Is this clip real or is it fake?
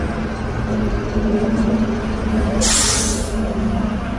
real